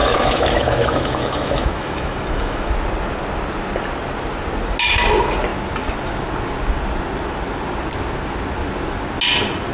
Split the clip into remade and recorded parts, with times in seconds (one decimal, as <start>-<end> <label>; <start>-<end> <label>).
0.0-2.7 remade; 2.7-9.7 recorded